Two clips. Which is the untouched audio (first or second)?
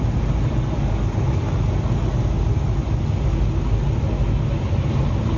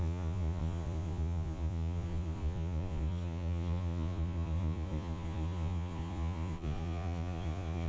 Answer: first